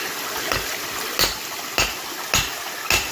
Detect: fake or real real